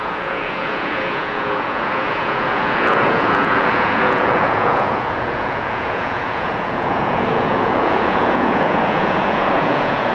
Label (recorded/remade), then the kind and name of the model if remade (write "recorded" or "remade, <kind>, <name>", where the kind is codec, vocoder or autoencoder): remade, vocoder, Vocos